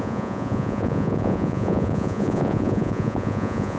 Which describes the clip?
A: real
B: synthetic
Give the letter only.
B